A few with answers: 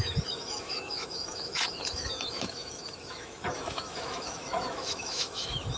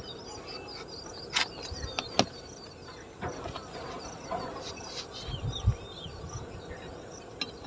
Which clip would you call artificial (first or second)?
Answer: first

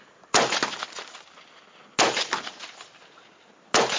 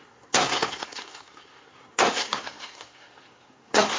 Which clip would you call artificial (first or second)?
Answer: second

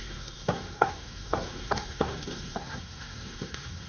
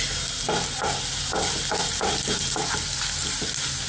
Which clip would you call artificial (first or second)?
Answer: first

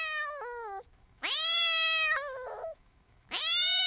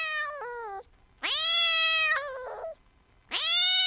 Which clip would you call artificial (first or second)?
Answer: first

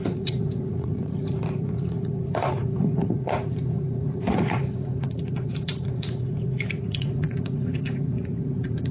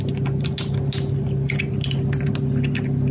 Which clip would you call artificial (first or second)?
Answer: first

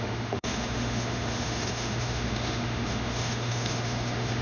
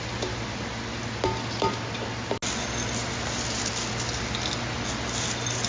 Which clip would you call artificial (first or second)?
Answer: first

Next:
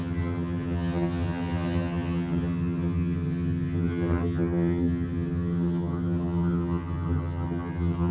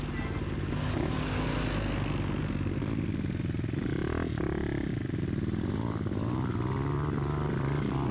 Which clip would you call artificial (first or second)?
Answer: first